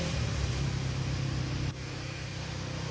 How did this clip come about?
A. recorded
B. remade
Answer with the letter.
A